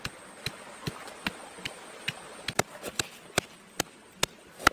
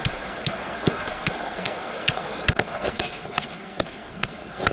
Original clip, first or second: first